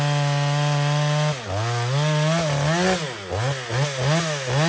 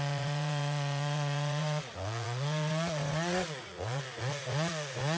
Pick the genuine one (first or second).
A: first